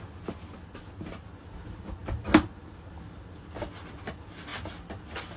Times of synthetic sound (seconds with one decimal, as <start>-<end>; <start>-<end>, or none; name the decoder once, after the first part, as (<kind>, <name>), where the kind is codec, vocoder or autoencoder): none